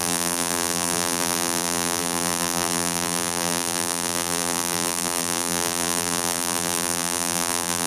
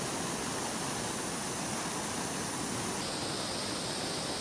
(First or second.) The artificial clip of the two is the first